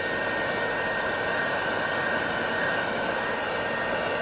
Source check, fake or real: real